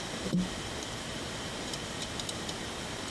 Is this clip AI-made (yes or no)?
no